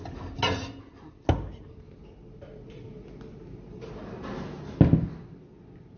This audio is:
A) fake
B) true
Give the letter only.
B